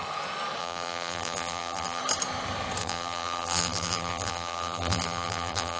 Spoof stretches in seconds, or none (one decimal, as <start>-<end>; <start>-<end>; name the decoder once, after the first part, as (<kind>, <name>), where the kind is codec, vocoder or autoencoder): 0.6-2.0 (vocoder, BigVGAN v2); 2.8-5.8